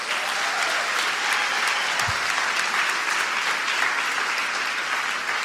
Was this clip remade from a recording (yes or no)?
no